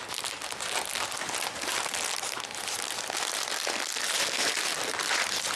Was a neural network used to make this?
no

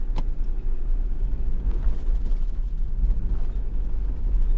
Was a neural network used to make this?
no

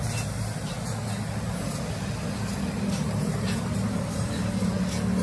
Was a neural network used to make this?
no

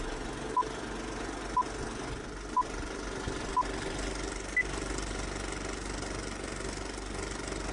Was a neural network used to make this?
no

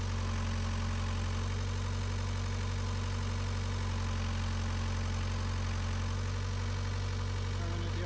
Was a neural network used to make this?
no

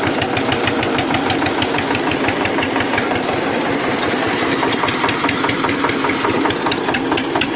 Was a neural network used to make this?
yes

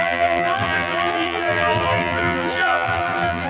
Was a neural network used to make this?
yes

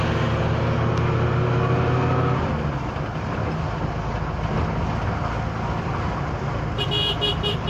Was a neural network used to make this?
no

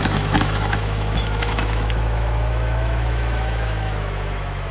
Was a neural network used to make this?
yes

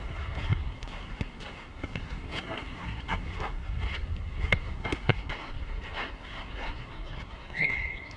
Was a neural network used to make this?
yes